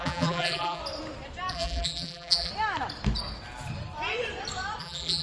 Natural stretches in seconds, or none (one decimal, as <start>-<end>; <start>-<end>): 0.8-1.5; 2.5-4.8